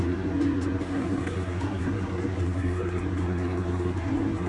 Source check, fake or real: fake